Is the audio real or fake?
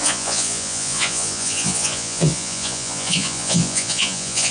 fake